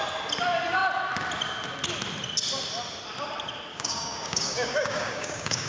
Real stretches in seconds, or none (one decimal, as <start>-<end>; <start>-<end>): 0.0-3.7